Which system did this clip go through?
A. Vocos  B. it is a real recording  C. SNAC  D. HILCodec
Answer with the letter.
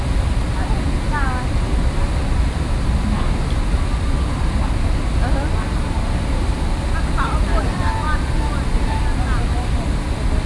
B